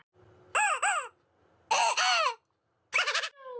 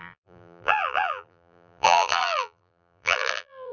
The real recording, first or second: first